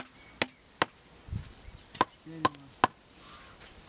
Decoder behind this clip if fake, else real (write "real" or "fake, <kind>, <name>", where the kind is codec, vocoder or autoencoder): real